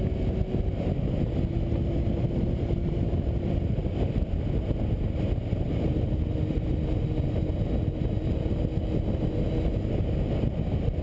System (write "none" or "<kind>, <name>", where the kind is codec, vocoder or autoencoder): none